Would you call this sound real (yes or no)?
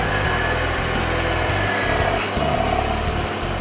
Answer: yes